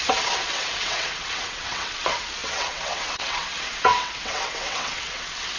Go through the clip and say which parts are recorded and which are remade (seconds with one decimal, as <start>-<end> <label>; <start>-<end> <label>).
0.0-5.6 remade